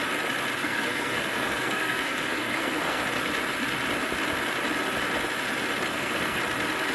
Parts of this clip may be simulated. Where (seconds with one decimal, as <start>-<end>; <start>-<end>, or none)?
0.6-3.0; 5.9-6.4